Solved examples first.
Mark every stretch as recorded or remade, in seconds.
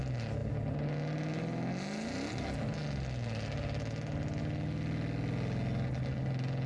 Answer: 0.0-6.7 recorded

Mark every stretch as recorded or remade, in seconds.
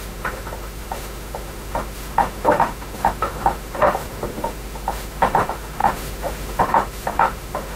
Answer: 0.0-7.8 remade